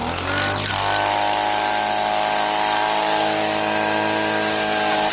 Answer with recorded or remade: recorded